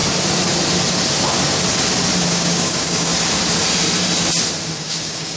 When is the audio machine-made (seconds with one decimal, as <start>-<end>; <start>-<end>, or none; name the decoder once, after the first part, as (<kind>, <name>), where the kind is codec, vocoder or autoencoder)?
2.3-3.1 (codec, DAC); 4.8-5.4